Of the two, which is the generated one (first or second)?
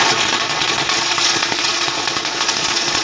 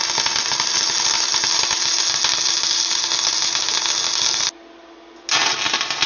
first